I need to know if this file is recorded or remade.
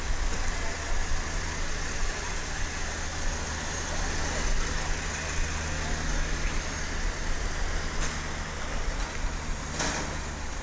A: recorded